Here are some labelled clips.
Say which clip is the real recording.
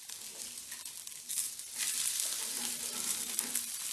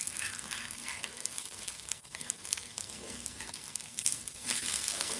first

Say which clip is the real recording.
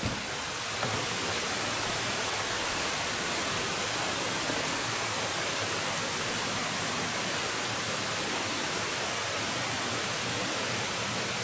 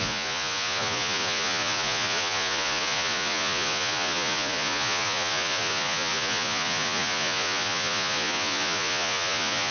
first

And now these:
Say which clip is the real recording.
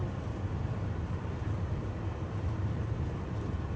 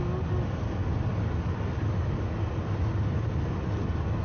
second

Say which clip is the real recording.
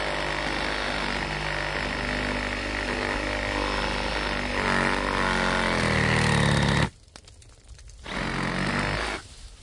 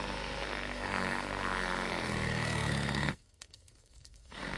first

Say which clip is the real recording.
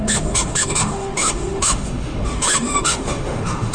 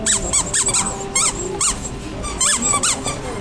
second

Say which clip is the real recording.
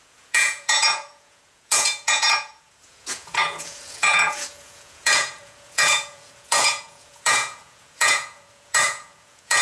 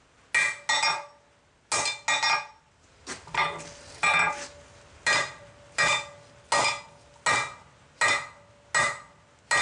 second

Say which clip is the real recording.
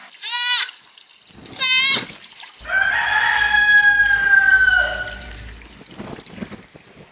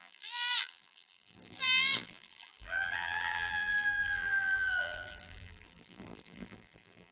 first